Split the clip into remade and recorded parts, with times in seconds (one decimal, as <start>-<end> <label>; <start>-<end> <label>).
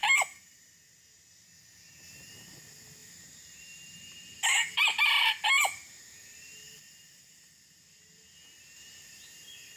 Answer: 0.0-0.7 remade; 0.7-3.0 recorded; 3.0-7.5 remade; 7.5-9.8 recorded